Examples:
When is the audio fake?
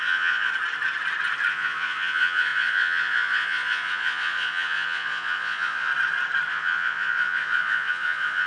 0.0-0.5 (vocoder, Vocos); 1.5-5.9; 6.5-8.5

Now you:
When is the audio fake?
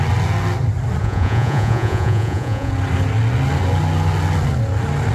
1.0-2.7 (vocoder, Vocos)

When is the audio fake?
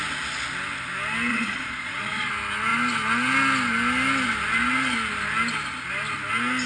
1.3-2.3 (vocoder, Vocos)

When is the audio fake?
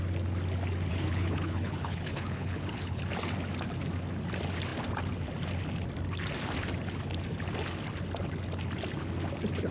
0.9-3.0 (codec, HILCodec)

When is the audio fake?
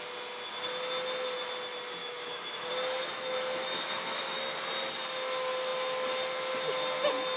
2.0-2.7 (autoencoder, DAC-VAE); 3.1-4.4